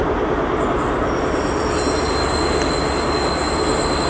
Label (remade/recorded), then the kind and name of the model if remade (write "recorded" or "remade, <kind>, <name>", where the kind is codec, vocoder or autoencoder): recorded